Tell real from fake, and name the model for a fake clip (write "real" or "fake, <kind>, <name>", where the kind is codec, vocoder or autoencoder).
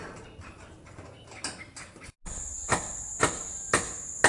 real